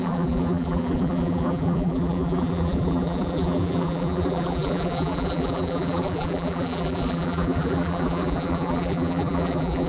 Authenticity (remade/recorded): remade